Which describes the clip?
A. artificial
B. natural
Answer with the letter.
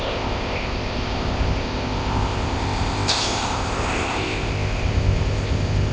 A